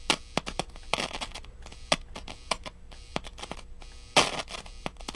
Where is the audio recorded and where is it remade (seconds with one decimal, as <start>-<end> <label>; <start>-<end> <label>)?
0.0-5.2 recorded